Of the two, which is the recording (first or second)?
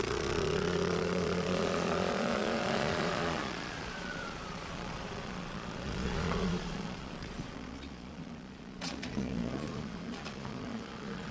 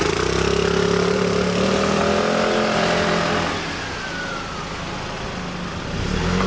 second